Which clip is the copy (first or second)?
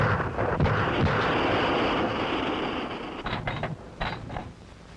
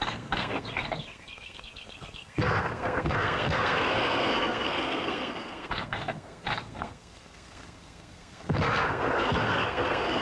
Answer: second